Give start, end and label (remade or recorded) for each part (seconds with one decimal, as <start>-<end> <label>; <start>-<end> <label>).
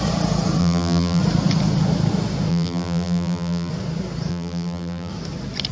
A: 0.0-0.6 recorded; 0.6-1.2 remade; 1.2-2.5 recorded; 2.5-3.7 remade; 3.7-4.3 recorded; 4.3-5.1 remade; 5.1-5.7 recorded